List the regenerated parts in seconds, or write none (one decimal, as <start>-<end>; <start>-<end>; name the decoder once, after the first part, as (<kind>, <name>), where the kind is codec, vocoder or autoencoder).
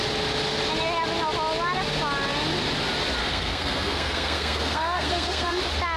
3.2-5.6 (codec, SNAC)